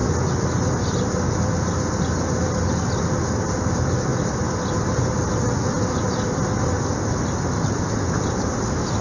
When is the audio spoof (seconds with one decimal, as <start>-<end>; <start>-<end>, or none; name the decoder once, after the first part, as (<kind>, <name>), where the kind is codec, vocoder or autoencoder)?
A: none